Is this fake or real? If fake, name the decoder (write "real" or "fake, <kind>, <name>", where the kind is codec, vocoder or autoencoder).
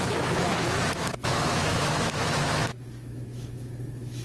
fake, autoencoder, DAC-VAE